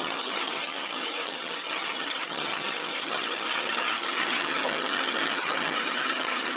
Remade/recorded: remade